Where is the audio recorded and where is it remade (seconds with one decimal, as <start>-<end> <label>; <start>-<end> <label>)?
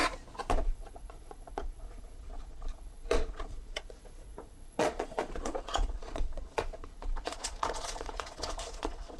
0.0-0.5 recorded; 0.5-9.2 remade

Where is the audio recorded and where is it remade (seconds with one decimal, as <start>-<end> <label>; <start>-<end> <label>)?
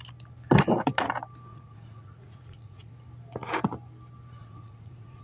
0.0-1.5 recorded; 1.5-2.9 remade; 2.9-4.4 recorded; 4.4-5.2 remade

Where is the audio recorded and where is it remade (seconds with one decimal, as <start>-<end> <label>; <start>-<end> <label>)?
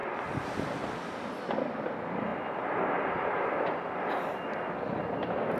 0.0-5.6 recorded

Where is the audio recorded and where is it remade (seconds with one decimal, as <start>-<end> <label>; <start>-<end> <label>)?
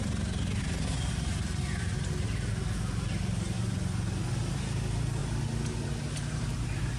0.0-0.9 remade; 0.9-4.4 recorded; 4.4-5.2 remade; 5.2-6.2 recorded; 6.2-7.0 remade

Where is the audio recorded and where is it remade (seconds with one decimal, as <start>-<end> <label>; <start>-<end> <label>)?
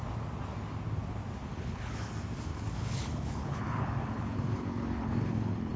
0.0-1.4 recorded; 1.4-2.1 remade; 2.1-2.5 recorded; 2.5-5.8 remade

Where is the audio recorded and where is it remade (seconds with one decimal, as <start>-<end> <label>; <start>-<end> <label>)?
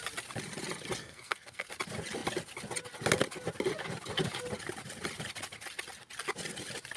0.0-1.0 recorded; 1.0-1.7 remade; 1.7-7.0 recorded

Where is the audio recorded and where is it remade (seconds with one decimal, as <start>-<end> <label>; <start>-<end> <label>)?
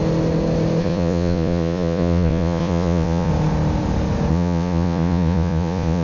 0.0-0.8 recorded; 0.8-3.3 remade; 3.3-4.3 recorded; 4.3-6.0 remade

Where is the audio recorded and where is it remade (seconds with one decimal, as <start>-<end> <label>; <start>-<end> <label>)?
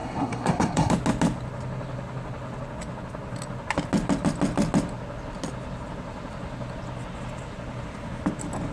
0.0-0.9 remade; 0.9-8.7 recorded